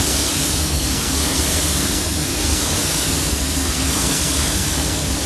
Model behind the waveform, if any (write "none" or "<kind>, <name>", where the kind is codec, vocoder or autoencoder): codec, SNAC